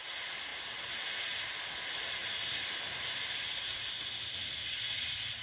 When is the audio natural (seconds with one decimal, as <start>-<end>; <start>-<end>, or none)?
0.0-5.4